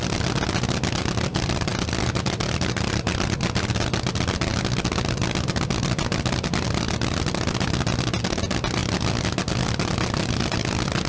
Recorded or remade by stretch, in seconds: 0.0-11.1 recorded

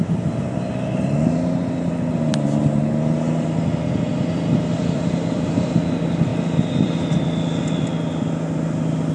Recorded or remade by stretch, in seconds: 0.0-9.1 recorded

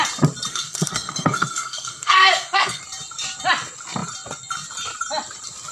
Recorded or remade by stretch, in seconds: 0.0-0.5 recorded; 0.5-2.8 remade; 2.8-5.7 recorded

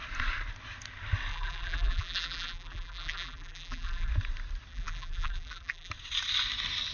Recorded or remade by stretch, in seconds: 0.0-1.3 recorded; 1.3-4.1 remade; 4.1-4.7 recorded; 4.7-5.9 remade; 5.9-6.9 recorded

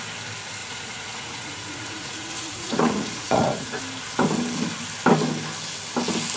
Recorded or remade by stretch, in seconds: 0.0-0.6 recorded; 0.6-3.8 remade; 3.8-6.4 recorded